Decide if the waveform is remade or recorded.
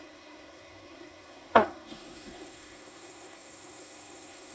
remade